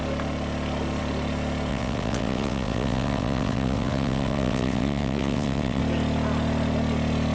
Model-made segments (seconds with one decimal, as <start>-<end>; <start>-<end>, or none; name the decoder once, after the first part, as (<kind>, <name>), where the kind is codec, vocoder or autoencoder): 1.7-5.8 (vocoder, WaveNeXt)